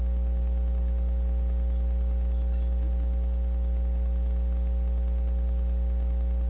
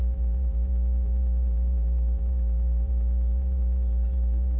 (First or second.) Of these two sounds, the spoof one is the second